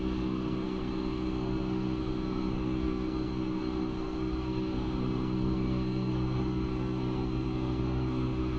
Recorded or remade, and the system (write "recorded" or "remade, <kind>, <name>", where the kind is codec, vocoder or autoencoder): remade, codec, SNAC